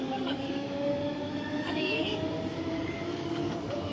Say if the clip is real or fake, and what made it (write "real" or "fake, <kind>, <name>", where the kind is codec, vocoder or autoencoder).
fake, codec, DAC